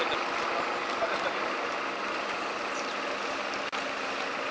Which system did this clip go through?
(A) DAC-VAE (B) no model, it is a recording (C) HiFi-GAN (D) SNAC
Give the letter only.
B